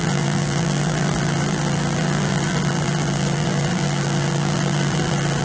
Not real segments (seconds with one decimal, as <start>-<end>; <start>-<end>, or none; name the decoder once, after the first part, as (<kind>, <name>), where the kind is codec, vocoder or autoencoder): 0.0-5.4 (vocoder, BigVGAN v2)